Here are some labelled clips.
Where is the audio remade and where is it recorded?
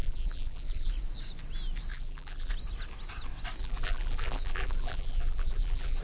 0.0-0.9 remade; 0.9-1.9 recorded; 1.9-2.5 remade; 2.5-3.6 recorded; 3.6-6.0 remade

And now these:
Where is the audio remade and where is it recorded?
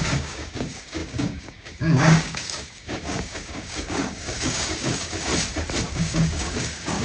0.0-5.3 remade; 5.3-5.9 recorded; 5.9-7.0 remade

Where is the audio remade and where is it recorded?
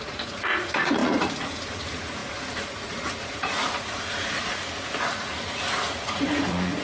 0.0-6.8 remade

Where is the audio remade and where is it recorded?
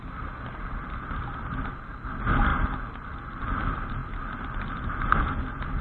0.0-5.8 recorded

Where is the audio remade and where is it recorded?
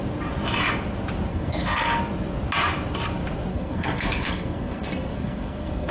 0.0-1.3 recorded; 1.3-2.0 remade; 2.0-3.5 recorded; 3.5-5.9 remade